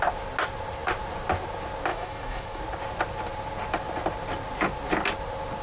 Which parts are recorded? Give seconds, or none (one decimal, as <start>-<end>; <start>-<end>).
0.0-1.9; 2.6-5.6